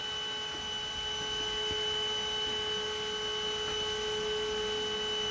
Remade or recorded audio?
recorded